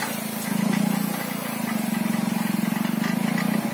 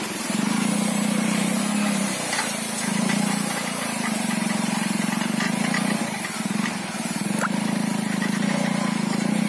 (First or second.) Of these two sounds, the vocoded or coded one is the second